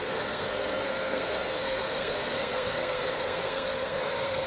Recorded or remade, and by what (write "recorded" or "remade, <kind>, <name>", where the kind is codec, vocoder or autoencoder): remade, codec, SNAC